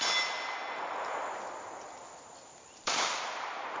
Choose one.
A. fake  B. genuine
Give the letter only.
B